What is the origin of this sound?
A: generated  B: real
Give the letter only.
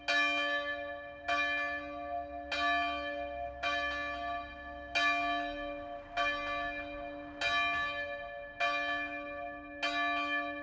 B